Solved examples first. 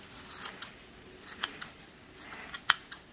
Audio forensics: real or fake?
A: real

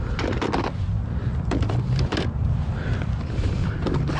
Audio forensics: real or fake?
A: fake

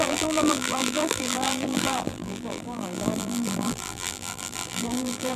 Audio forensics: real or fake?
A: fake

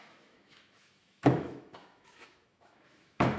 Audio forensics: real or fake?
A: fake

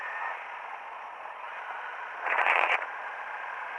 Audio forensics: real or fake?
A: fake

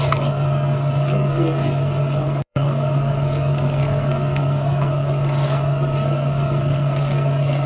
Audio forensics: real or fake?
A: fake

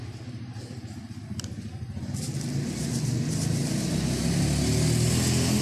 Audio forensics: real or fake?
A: real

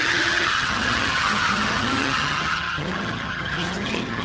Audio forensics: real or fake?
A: fake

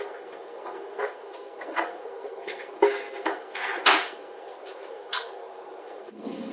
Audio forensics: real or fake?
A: fake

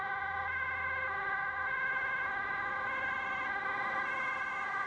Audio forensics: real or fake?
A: real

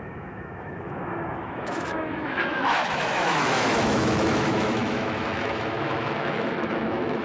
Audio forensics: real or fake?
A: fake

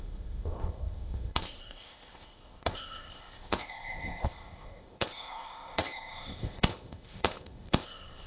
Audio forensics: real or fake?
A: fake